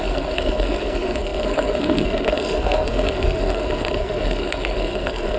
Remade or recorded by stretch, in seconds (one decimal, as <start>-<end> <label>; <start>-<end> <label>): 0.0-5.4 remade